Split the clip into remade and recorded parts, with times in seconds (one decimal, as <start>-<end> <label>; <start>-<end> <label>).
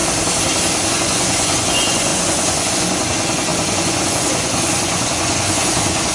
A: 0.0-0.9 recorded; 0.9-6.1 remade